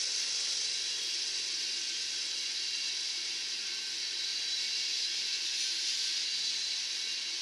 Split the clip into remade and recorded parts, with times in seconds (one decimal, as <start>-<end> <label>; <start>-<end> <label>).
0.0-7.4 recorded